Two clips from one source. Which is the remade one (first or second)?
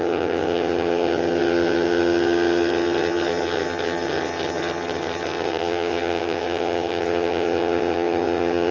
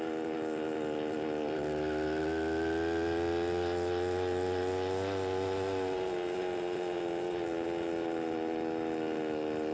first